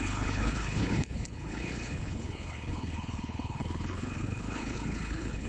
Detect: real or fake fake